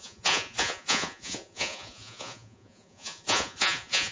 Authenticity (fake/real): fake